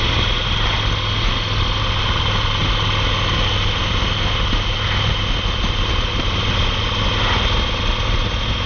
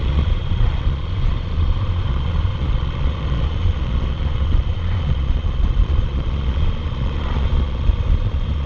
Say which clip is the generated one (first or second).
second